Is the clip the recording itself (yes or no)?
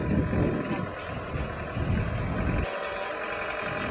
yes